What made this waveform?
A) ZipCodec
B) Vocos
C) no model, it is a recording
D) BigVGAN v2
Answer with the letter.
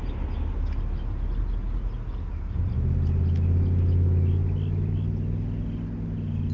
C